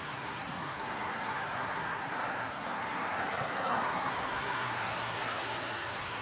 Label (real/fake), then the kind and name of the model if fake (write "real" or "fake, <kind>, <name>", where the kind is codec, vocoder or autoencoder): fake, codec, SNAC